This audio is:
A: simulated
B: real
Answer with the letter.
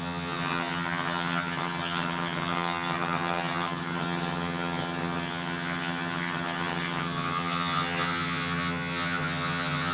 A